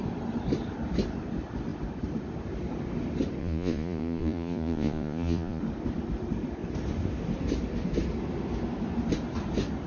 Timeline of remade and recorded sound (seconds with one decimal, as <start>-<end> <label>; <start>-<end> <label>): 0.0-3.4 recorded; 3.4-5.6 remade; 5.6-9.9 recorded